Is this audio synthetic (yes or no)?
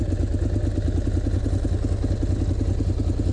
no